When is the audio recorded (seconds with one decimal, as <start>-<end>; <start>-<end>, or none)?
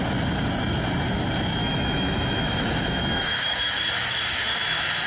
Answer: 0.0-1.6